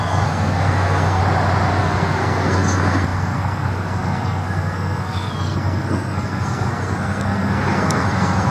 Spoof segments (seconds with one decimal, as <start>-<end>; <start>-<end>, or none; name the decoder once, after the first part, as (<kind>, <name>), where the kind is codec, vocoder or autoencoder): 0.0-1.2 (codec, SNAC); 1.8-8.5